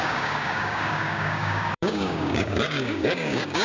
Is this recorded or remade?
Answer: remade